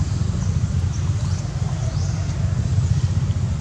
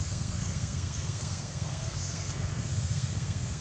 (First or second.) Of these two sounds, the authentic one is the first